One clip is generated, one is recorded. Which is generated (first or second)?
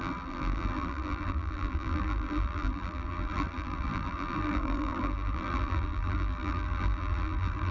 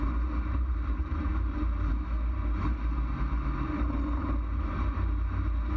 first